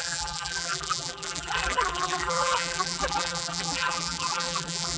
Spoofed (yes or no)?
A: yes